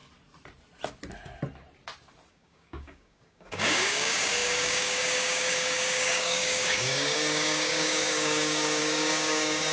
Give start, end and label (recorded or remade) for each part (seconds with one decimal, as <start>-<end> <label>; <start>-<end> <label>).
0.0-2.3 recorded; 2.3-9.7 remade